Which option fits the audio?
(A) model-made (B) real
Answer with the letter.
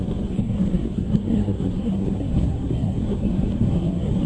A